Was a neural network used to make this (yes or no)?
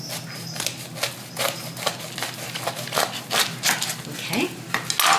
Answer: no